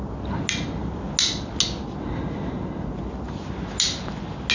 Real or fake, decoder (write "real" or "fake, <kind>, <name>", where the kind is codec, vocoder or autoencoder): real